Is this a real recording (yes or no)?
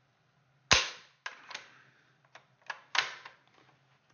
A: yes